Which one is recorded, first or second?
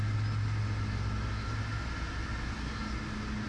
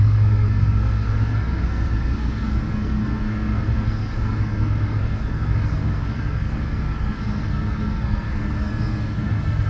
first